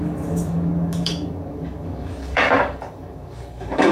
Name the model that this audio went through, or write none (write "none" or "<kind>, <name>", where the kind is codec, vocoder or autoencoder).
codec, DAC